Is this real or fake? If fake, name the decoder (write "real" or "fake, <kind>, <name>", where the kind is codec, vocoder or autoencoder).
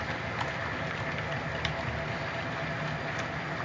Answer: real